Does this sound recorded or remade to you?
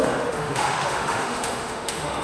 remade